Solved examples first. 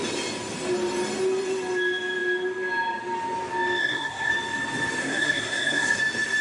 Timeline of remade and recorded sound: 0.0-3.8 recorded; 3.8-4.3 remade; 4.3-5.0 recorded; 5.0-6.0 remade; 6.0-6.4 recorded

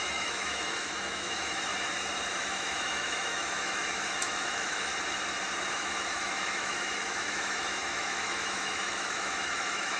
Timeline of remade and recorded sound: 0.0-1.7 remade; 1.7-2.3 recorded; 2.3-4.9 remade; 4.9-5.7 recorded; 5.7-10.0 remade

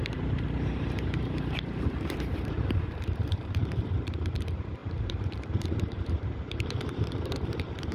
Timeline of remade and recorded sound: 0.0-7.9 remade

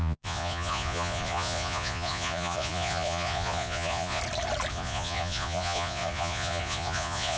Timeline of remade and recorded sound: 0.0-4.2 remade; 4.2-4.7 recorded; 4.7-7.4 remade

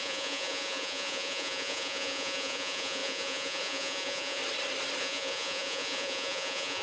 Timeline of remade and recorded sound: 0.0-4.4 remade; 4.4-5.0 recorded; 5.0-6.8 remade